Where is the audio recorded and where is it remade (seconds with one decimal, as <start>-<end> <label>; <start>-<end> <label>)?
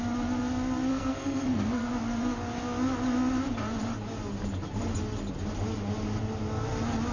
0.0-0.9 recorded; 0.9-1.9 remade; 1.9-7.1 recorded